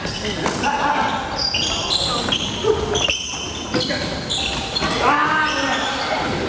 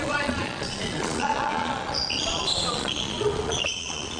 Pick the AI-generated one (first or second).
second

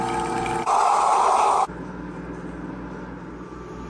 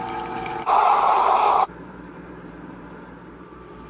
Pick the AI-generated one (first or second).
second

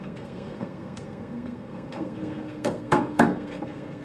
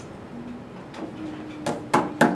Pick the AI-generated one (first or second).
first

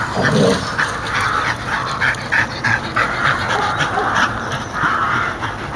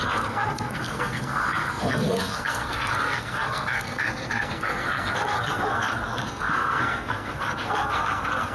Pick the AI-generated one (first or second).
second